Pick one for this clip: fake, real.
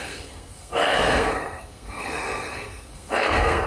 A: fake